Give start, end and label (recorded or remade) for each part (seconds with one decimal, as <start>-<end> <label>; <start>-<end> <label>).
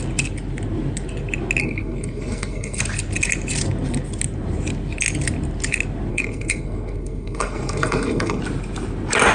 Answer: 0.0-1.6 recorded; 1.6-2.8 remade; 2.8-6.1 recorded; 6.1-8.4 remade; 8.4-9.3 recorded